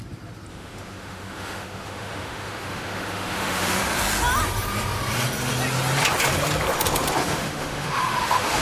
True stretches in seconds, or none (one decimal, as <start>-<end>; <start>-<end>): 0.0-0.5; 3.8-7.2